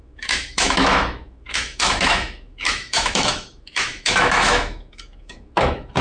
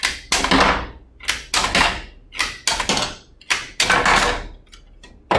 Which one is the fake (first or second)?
first